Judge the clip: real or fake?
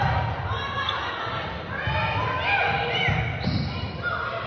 real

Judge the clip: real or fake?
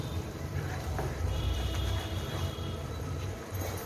fake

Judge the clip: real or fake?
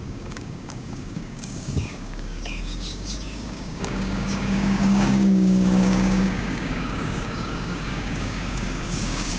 fake